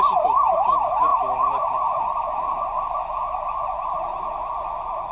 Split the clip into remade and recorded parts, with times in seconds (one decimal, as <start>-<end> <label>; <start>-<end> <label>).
0.0-5.1 recorded